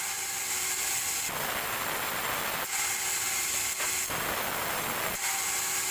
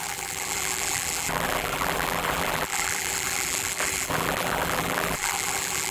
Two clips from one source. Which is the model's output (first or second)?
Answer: second